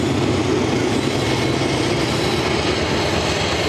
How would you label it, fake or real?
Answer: real